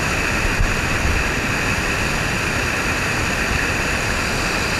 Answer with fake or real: real